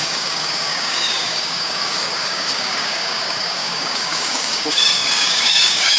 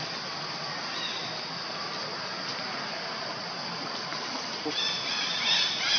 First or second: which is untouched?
second